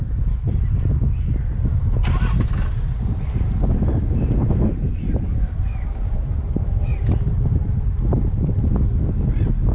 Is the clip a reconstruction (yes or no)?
no